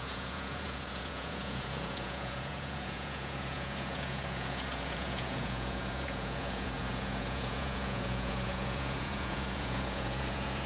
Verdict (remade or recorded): remade